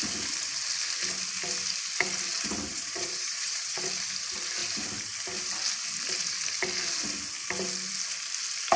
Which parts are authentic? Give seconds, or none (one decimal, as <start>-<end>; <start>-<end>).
0.0-2.7; 3.8-8.8